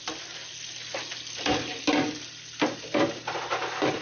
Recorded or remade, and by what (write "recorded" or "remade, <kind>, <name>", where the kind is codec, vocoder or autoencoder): recorded